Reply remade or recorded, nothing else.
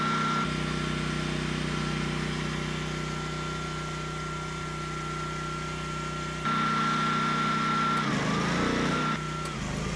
recorded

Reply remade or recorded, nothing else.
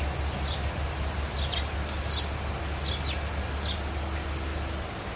recorded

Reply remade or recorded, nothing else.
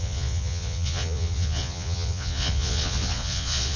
remade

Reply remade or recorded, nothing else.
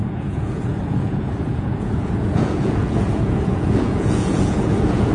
remade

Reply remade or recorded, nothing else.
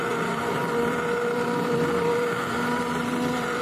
remade